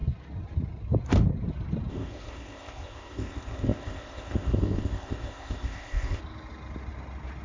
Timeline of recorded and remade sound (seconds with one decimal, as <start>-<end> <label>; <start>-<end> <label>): 0.0-1.9 recorded; 1.9-6.2 remade; 6.2-7.4 recorded